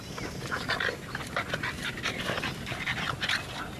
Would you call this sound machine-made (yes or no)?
no